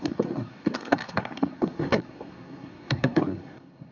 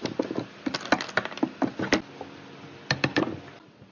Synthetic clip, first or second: first